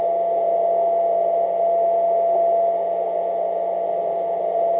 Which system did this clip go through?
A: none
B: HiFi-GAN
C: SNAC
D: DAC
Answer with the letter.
A